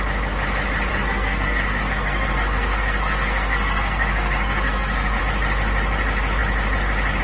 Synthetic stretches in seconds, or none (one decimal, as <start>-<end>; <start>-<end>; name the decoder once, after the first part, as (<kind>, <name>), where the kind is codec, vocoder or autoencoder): 0.9-5.2 (codec, SNAC)